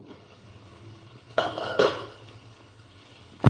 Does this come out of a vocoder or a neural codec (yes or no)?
yes